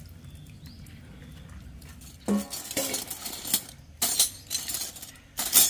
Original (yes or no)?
yes